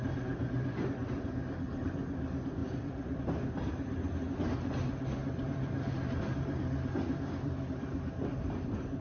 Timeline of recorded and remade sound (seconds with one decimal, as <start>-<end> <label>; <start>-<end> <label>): 0.0-1.1 remade; 1.1-2.6 recorded; 2.6-3.2 remade; 3.2-5.2 recorded; 5.2-9.0 remade